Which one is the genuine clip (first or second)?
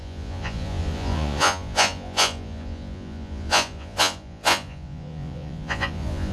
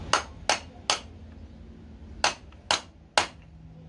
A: second